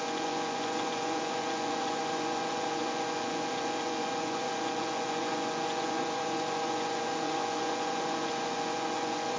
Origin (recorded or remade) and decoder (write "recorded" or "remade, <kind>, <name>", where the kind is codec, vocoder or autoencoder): remade, vocoder, Vocos